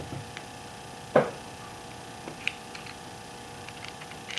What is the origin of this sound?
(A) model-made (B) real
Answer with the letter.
B